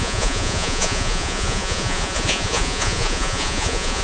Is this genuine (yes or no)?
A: no